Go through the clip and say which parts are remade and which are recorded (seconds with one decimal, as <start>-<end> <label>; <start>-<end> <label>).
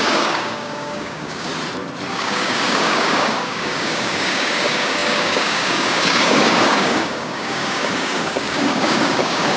0.0-1.5 remade; 1.5-2.1 recorded; 2.1-9.6 remade